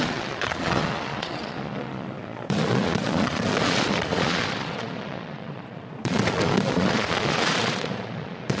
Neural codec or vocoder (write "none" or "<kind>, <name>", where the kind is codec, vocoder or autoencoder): vocoder, Vocos